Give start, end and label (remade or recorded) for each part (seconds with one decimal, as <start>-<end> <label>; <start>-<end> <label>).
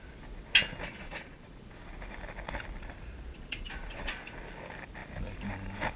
0.0-0.9 recorded; 0.9-1.7 remade; 1.7-3.3 recorded; 3.3-4.1 remade; 4.1-6.0 recorded